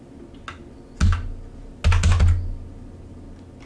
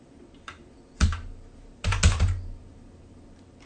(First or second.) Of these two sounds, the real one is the first